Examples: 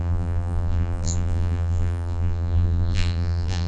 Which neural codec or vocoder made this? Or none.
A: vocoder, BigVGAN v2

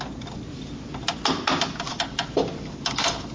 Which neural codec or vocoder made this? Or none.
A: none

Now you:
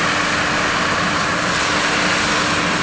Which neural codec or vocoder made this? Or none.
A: none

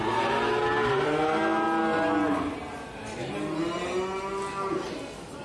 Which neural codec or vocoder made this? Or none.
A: none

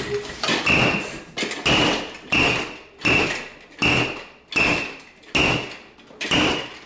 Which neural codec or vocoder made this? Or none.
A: none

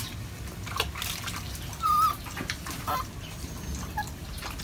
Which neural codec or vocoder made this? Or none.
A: none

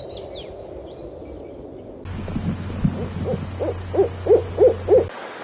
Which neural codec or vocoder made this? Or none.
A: none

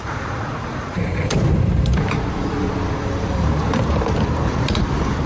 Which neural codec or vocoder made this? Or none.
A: vocoder, BigVGAN v2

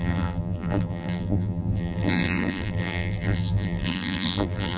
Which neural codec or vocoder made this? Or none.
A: vocoder, BigVGAN v2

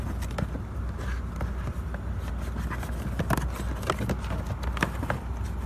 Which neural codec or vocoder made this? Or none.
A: none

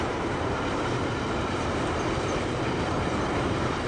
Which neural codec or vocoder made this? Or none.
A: vocoder, BigVGAN v2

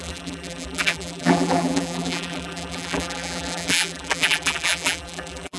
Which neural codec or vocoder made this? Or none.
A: vocoder, BigVGAN v2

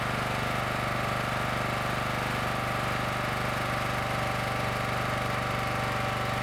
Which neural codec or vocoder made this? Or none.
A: none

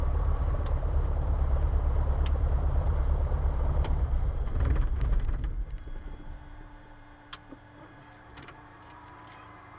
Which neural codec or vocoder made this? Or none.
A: vocoder, BigVGAN v2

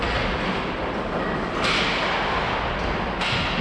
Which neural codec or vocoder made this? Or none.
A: none